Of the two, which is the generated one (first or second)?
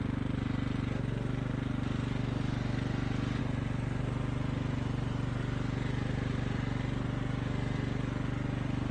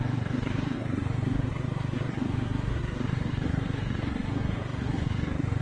second